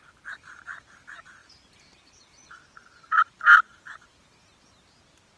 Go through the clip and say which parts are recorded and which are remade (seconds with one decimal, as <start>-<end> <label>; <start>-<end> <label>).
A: 0.0-5.4 recorded